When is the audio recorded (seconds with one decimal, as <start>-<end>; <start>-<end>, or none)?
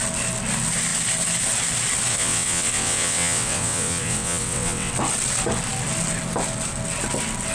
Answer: 0.0-2.1; 4.9-7.5